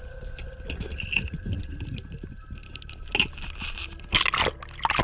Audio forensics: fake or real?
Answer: real